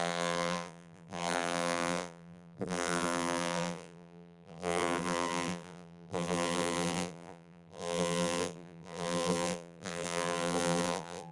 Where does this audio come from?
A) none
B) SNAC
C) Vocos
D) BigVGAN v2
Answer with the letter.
D